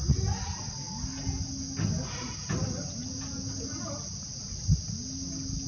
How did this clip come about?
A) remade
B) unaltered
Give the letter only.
B